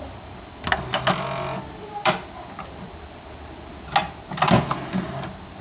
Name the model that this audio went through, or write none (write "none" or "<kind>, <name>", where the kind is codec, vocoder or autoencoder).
none